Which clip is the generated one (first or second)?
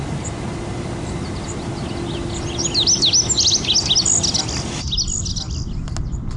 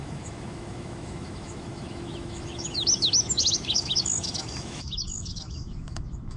second